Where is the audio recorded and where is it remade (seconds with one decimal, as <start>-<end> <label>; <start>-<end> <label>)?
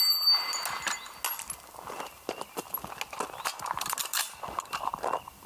0.0-5.5 recorded